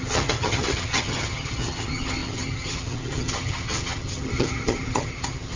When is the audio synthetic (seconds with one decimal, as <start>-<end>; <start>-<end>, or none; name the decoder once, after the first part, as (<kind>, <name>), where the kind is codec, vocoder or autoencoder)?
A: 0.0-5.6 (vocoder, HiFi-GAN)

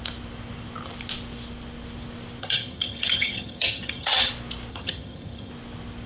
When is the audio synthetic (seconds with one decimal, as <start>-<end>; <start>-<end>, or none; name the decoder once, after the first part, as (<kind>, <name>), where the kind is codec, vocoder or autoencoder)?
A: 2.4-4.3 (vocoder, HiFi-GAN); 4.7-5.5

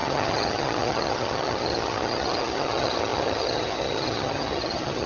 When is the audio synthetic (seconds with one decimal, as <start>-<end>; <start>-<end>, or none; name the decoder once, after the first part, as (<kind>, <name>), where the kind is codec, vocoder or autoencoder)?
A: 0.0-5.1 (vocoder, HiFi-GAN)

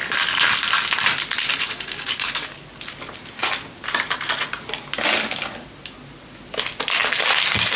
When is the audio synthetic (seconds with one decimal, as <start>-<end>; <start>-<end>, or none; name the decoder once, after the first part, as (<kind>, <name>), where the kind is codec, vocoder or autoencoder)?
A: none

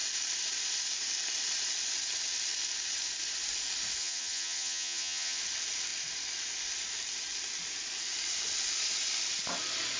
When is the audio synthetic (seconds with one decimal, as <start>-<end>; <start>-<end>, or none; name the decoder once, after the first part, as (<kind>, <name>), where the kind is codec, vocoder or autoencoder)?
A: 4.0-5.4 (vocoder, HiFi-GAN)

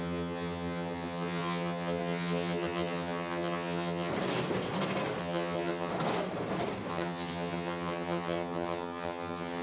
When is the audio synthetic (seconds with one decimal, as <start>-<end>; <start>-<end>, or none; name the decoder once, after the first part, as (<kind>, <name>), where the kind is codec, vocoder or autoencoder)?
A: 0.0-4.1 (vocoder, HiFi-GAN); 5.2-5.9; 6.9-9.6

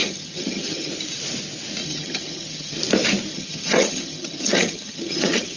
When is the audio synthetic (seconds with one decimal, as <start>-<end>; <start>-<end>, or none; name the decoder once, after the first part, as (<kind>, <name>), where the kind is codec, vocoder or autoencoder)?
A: 0.0-0.9 (vocoder, HiFi-GAN); 1.8-2.8; 3.3-5.6

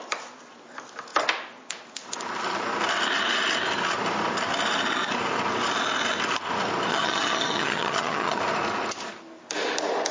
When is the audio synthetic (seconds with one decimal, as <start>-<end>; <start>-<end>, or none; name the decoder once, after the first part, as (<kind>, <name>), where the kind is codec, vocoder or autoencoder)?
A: 6.9-8.4 (vocoder, HiFi-GAN)